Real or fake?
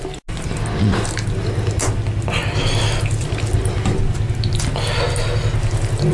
real